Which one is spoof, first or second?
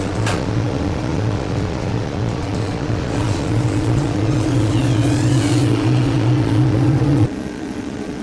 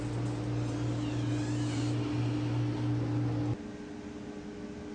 first